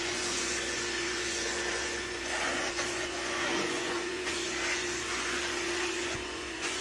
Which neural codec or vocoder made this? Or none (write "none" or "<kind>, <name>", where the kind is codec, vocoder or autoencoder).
vocoder, Vocos